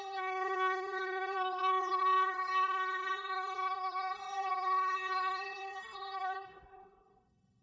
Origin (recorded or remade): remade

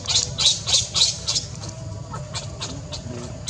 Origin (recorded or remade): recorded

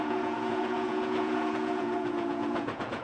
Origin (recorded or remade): remade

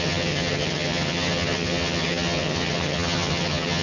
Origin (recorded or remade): remade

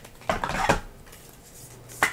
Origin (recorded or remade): recorded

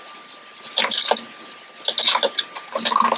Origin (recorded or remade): recorded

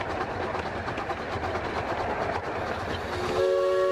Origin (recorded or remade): recorded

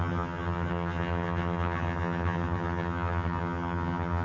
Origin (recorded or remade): remade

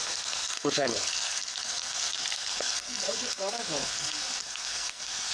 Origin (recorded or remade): remade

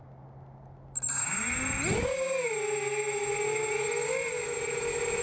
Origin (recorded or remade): recorded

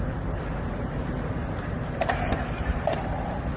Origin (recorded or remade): remade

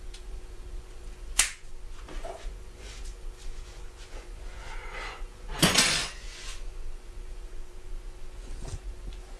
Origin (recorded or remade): remade